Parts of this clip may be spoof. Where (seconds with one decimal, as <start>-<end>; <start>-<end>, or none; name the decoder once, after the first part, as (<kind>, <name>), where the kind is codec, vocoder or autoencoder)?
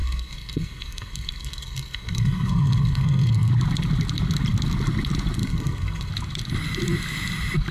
0.0-3.5 (codec, SNAC); 5.4-6.1